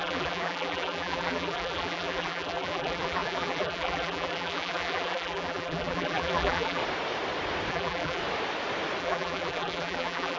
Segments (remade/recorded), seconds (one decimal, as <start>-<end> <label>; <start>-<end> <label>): 0.0-6.8 remade; 6.8-7.7 recorded; 7.7-8.2 remade; 8.2-9.0 recorded; 9.0-10.4 remade